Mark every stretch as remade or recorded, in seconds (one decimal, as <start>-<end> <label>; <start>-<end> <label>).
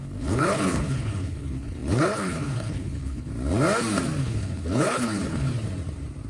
0.0-3.3 remade; 3.3-4.2 recorded; 4.2-5.5 remade; 5.5-6.3 recorded